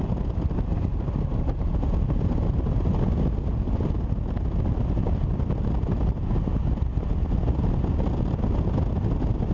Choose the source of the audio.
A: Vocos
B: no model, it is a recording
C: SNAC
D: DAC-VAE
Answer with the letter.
B